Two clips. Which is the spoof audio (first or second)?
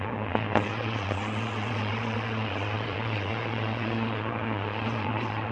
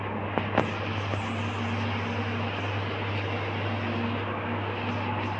first